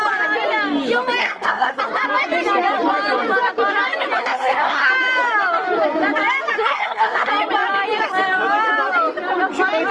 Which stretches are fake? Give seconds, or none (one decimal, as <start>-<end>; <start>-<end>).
1.2-1.8; 4.2-4.9; 6.6-7.3

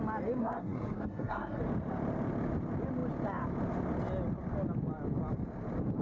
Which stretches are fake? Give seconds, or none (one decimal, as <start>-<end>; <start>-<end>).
0.4-1.6